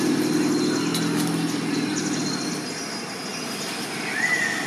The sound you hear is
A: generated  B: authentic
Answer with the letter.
B